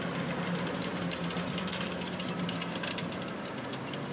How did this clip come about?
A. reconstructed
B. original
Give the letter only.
B